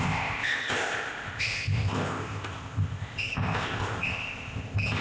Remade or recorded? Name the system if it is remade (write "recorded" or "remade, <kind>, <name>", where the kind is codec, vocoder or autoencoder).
remade, codec, ZipCodec